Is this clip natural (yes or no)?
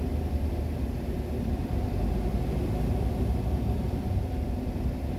no